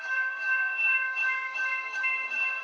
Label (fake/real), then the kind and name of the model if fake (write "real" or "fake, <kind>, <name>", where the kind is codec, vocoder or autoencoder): fake, autoencoder, DAC-VAE